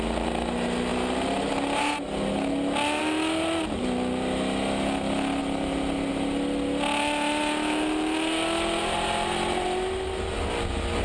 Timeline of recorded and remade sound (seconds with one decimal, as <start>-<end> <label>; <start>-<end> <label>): 0.0-11.0 recorded